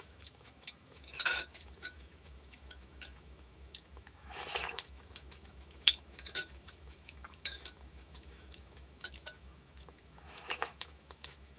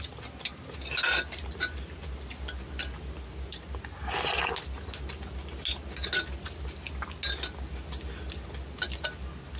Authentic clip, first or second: second